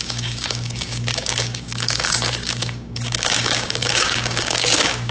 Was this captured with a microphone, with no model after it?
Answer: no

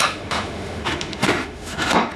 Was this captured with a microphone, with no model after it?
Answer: no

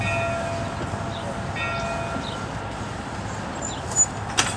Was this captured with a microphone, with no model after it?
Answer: yes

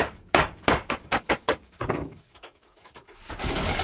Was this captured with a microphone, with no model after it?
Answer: no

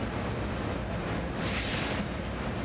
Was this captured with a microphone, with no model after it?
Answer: yes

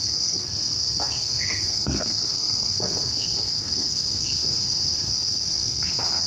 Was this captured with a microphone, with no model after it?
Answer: no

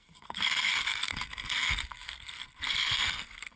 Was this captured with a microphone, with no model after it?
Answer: no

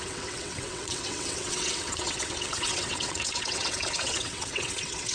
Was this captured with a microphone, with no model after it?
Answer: no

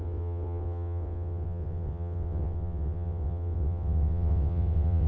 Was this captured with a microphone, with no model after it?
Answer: no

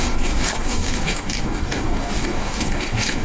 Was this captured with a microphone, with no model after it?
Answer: no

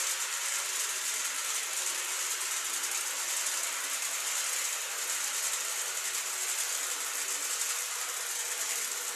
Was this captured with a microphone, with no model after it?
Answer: yes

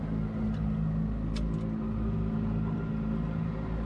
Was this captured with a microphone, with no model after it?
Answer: yes